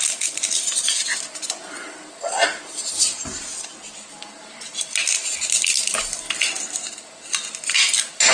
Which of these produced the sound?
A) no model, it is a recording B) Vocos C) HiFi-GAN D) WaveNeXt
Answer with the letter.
A